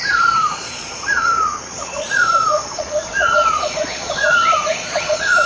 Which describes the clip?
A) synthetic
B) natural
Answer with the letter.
A